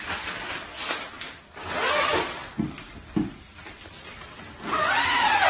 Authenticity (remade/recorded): recorded